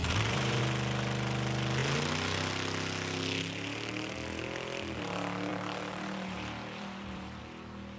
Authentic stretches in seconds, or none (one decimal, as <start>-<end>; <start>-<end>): 0.6-5.5; 7.4-8.0